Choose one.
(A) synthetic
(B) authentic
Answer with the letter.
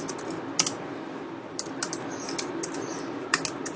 B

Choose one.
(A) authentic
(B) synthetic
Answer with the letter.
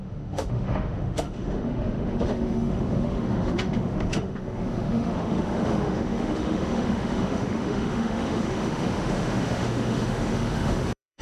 B